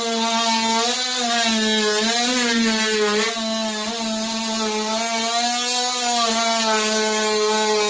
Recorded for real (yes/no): yes